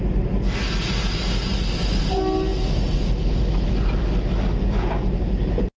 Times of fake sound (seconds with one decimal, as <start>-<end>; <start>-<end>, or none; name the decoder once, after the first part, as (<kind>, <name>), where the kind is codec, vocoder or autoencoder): none

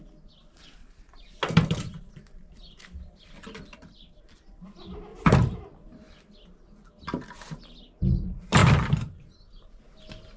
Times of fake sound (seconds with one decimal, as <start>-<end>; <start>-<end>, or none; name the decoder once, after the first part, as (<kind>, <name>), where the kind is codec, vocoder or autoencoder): 0.8-4.2 (vocoder, BigVGAN v2); 5.1-5.6; 8.6-9.2

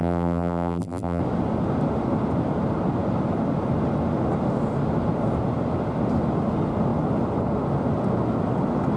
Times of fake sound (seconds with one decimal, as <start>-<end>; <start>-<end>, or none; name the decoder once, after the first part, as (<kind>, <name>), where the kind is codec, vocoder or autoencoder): 0.0-1.2 (vocoder, BigVGAN v2)

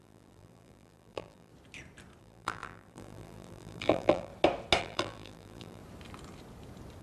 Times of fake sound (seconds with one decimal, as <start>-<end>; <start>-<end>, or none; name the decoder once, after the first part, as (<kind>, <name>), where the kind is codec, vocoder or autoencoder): 0.0-1.5 (vocoder, BigVGAN v2); 2.2-4.3; 4.8-5.8

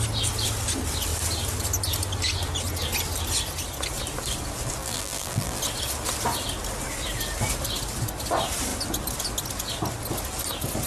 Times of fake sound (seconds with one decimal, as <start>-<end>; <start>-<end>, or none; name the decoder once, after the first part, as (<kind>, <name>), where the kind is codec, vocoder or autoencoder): 4.8-5.6 (vocoder, BigVGAN v2)